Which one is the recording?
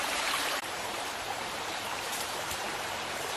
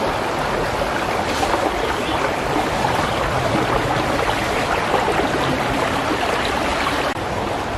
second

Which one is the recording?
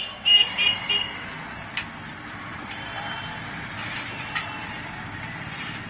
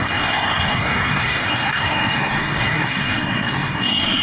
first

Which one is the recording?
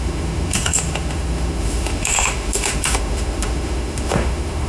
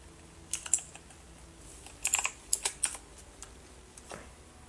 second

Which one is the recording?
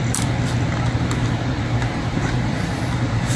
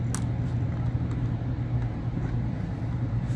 second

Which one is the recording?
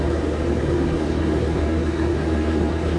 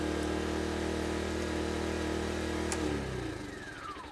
second